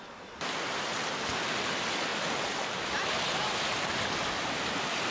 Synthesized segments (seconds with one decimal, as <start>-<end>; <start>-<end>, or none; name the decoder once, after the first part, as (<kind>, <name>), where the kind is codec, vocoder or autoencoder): none